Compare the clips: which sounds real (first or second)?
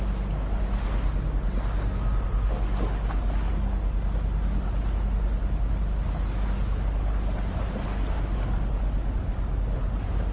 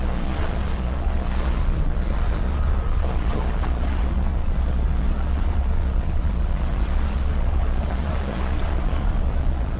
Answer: first